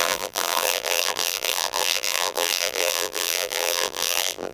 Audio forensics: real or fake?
fake